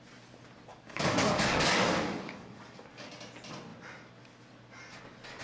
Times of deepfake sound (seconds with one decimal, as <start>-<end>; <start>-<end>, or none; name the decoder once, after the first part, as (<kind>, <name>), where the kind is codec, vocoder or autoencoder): 0.7-3.1 (codec, DAC)